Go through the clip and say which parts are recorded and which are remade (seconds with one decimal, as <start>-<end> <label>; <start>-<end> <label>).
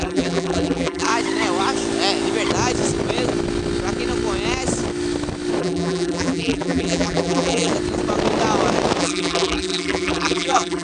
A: 0.0-1.1 remade; 1.1-5.6 recorded; 5.6-7.7 remade; 7.7-9.0 recorded; 9.0-10.8 remade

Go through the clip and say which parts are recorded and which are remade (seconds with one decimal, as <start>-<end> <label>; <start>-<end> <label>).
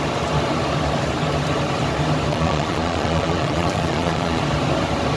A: 0.0-2.3 recorded; 2.3-4.4 remade; 4.4-5.2 recorded